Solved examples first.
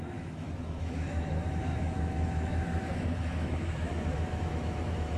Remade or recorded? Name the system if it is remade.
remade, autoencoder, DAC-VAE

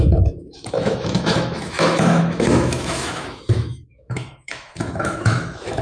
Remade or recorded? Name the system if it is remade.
remade, autoencoder, DAC-VAE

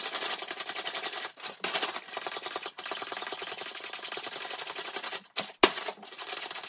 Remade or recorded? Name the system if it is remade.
recorded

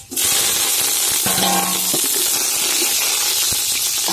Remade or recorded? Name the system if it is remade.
recorded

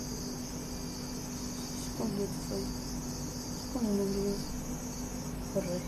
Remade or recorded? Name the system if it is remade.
recorded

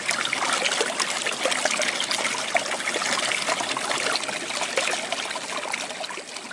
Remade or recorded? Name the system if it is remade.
recorded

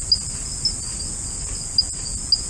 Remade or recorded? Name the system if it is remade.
recorded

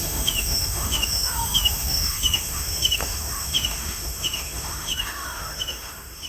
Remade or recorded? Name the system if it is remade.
remade, autoencoder, DAC-VAE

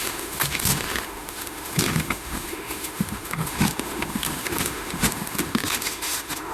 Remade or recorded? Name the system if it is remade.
remade, autoencoder, DAC-VAE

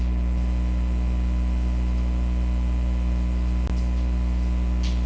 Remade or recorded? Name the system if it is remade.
recorded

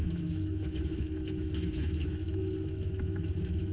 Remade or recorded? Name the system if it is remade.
remade, autoencoder, DAC-VAE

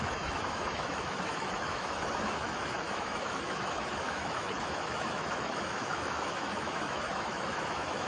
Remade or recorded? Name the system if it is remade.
remade, autoencoder, DAC-VAE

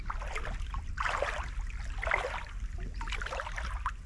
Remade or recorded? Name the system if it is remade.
recorded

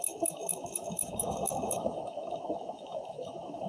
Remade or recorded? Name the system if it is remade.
remade, autoencoder, DAC-VAE